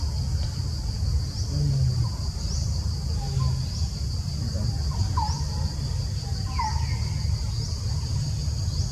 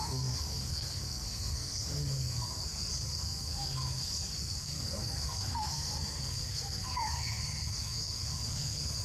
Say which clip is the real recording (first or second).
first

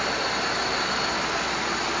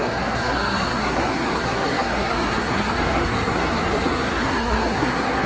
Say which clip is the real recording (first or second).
first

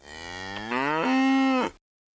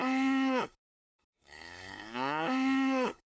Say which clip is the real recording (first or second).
first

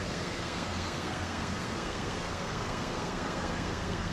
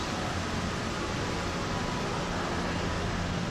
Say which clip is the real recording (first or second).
second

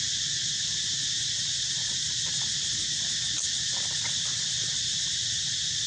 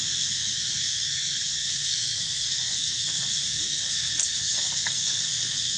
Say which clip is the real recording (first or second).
first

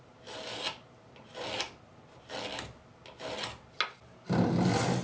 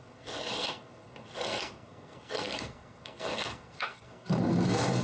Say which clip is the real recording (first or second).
first